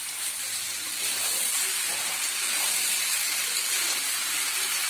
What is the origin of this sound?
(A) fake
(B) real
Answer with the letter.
B